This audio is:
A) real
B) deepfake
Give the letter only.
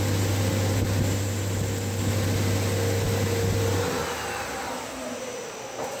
A